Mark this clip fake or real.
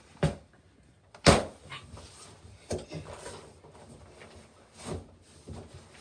real